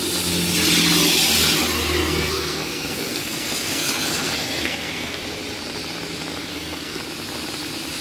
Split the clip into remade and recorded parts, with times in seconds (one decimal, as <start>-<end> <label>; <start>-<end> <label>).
0.0-2.0 recorded; 2.0-5.2 remade; 5.2-6.5 recorded; 6.5-7.0 remade; 7.0-8.0 recorded